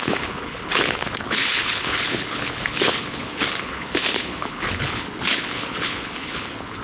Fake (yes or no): yes